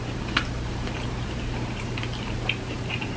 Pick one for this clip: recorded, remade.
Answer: recorded